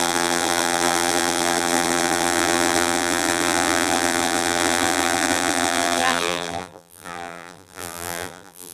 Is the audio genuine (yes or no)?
no